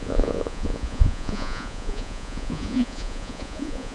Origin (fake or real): fake